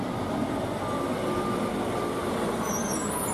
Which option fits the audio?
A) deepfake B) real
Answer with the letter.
B